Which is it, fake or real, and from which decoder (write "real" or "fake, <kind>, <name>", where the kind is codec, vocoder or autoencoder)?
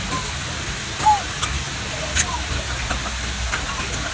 real